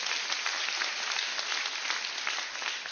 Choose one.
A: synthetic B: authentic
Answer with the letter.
B